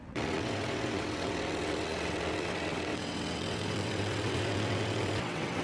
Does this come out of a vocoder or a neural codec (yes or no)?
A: yes